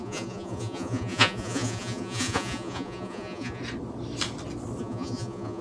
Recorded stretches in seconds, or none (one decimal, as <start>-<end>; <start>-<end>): 3.6-4.8

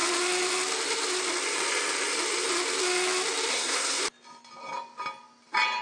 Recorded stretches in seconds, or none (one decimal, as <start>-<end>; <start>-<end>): 0.0-3.5; 4.0-5.8

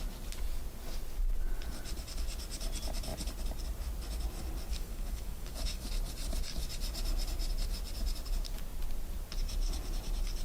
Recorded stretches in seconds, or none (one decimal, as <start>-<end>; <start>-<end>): 0.0-4.7; 5.9-10.4

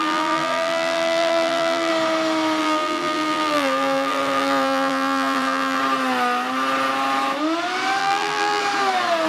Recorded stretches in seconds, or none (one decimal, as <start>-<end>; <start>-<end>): 1.9-2.6; 5.8-8.0; 8.6-9.3